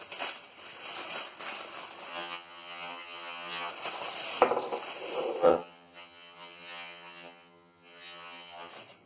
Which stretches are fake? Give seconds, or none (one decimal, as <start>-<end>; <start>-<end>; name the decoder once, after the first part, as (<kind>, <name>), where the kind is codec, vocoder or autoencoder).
2.1-3.7 (vocoder, HiFi-GAN); 5.4-8.7